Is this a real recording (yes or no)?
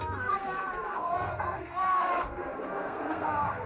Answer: no